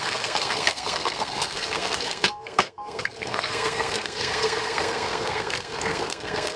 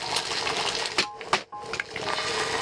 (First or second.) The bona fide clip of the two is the second